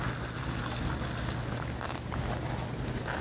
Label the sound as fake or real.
real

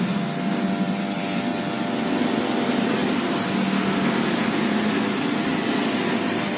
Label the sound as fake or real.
real